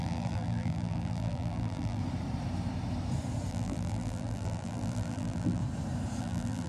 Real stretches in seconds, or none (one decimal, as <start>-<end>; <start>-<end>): 2.0-3.5; 5.6-6.2